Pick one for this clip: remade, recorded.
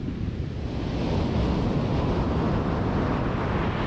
recorded